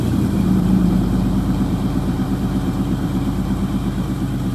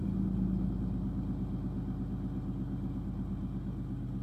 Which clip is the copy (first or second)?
first